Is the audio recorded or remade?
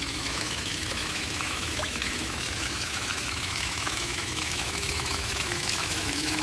remade